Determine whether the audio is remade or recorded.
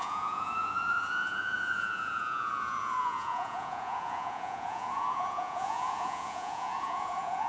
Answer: remade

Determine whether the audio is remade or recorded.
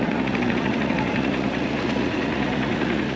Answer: remade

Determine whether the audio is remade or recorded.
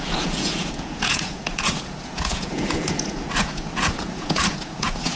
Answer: remade